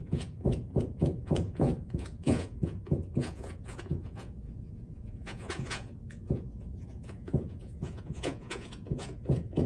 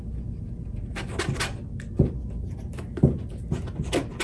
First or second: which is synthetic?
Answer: first